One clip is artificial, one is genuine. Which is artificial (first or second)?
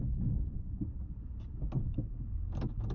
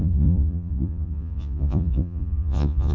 second